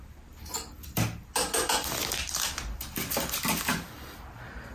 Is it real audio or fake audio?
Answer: real